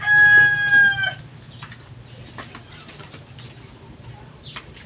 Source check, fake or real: real